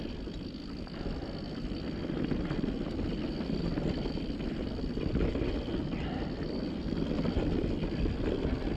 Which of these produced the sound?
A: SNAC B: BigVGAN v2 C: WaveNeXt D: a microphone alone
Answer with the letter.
D